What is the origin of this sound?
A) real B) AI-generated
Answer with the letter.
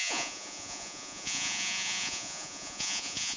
B